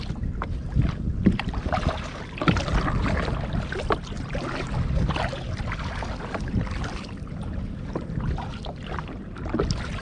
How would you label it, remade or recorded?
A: recorded